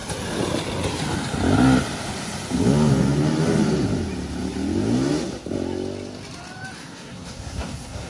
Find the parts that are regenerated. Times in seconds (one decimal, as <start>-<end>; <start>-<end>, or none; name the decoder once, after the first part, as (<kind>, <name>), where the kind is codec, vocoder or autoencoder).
6.8-8.1 (codec, SNAC)